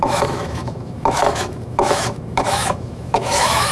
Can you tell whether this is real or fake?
fake